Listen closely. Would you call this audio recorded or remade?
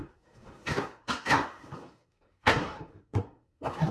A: remade